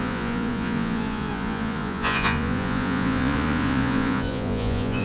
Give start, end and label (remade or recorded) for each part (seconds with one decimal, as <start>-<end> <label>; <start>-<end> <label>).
0.0-5.0 remade